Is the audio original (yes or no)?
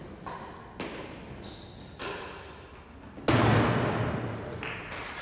yes